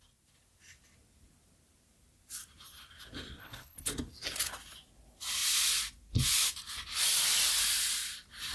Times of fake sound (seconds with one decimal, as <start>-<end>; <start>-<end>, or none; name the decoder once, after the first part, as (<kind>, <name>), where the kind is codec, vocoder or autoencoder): 3.4-3.9 (codec, HILCodec)